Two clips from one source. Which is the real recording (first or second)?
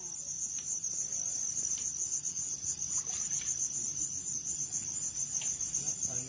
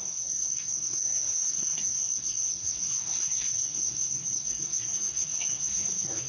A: first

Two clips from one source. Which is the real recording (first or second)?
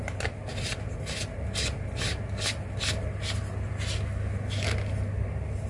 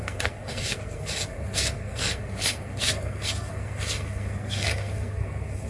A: first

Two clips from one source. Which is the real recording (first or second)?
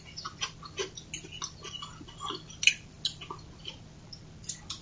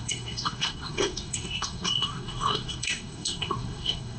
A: first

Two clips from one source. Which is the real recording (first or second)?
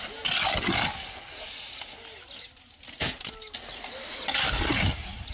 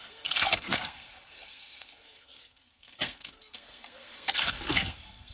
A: first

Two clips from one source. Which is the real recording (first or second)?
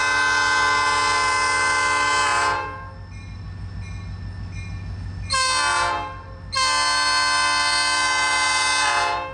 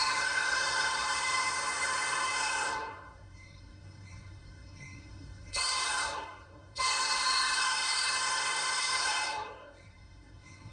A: first